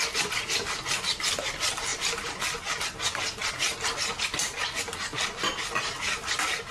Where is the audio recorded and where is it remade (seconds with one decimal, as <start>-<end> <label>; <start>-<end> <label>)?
0.0-1.9 recorded; 1.9-2.8 remade; 2.8-6.7 recorded